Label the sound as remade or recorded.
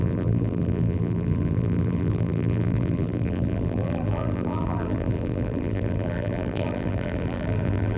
remade